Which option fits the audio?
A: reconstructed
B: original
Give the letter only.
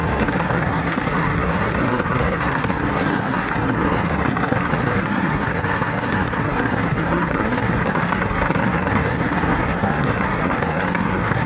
A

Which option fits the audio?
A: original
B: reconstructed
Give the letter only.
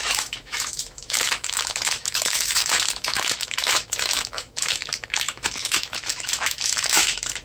B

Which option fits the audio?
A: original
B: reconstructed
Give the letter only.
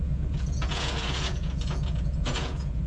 B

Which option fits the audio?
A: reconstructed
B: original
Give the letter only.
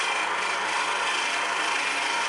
B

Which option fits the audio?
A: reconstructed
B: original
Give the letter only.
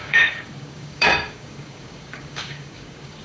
A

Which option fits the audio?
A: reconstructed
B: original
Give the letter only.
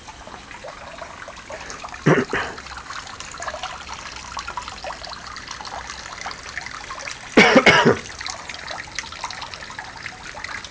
B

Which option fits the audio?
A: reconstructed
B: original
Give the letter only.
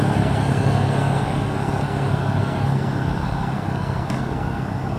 A